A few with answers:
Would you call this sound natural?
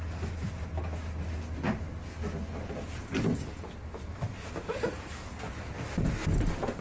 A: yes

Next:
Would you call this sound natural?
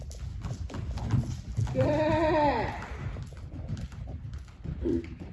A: yes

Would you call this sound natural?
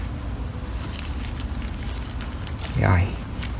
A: yes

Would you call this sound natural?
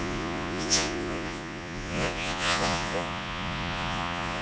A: no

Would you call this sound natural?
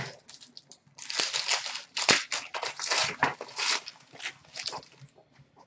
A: yes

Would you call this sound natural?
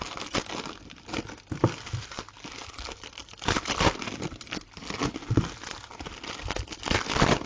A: yes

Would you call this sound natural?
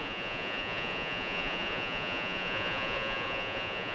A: no